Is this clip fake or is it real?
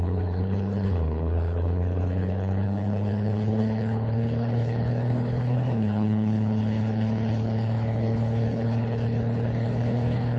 fake